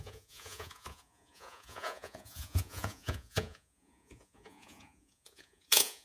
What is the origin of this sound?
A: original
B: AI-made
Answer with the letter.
B